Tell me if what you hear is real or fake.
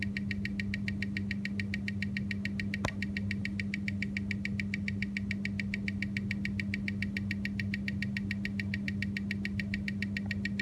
real